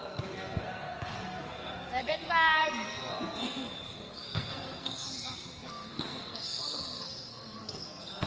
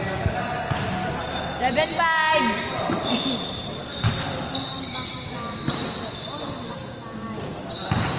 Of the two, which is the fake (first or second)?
first